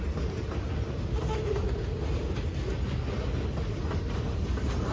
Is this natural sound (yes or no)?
yes